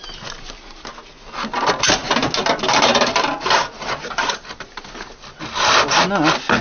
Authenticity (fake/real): real